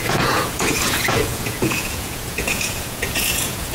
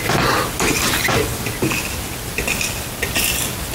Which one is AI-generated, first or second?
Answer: first